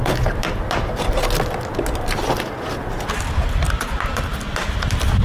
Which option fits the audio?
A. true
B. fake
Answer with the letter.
A